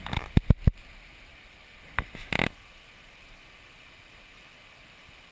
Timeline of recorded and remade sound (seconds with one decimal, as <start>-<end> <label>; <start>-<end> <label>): 0.0-1.3 recorded; 1.3-2.0 remade; 2.0-5.3 recorded